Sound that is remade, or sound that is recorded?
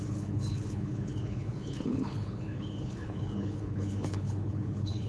remade